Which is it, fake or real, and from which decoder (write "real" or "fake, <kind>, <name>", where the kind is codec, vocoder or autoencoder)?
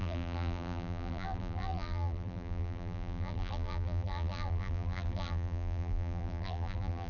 fake, vocoder, BigVGAN v2